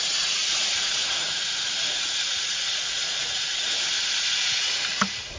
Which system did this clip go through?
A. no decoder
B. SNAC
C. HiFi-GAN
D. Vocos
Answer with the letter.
D